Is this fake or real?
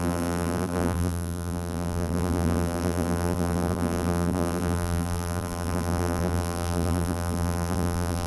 fake